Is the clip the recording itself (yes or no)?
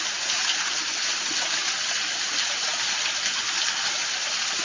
yes